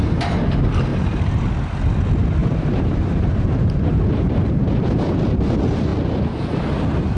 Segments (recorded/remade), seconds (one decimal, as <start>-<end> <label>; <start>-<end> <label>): 0.0-0.9 recorded; 0.9-1.5 remade; 1.5-2.4 recorded; 2.4-5.1 remade; 5.1-7.2 recorded